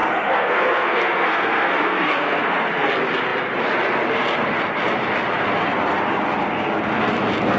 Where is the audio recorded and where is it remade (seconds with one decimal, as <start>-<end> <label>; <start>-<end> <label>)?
0.0-2.9 remade; 2.9-7.6 recorded